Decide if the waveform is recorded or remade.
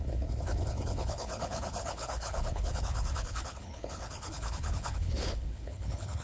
remade